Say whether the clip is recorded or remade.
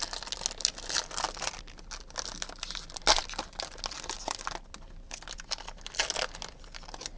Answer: recorded